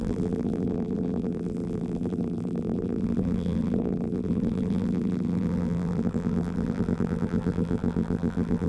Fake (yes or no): yes